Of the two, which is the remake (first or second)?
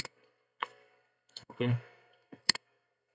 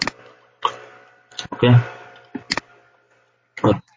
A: first